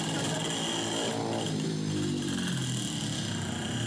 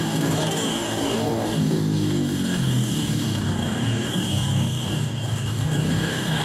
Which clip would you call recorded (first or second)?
first